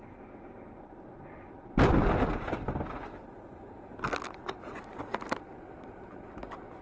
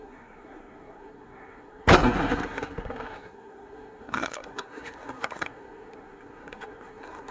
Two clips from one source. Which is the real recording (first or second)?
first